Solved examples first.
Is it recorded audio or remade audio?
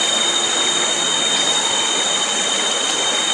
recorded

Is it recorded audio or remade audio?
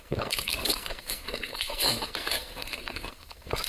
remade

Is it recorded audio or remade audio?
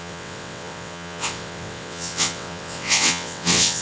remade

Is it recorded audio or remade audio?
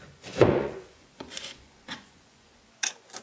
remade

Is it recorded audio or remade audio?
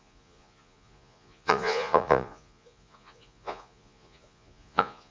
remade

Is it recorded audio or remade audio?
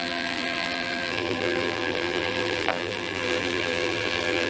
remade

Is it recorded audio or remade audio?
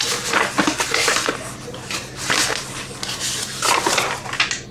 recorded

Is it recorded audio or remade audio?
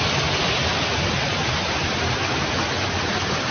recorded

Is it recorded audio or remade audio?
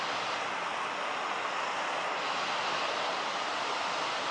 recorded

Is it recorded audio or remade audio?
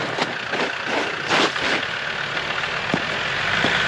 recorded